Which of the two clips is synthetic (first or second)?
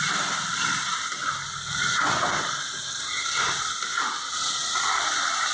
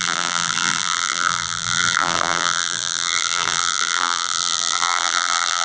second